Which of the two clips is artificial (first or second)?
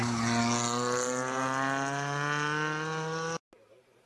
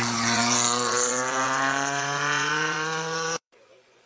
second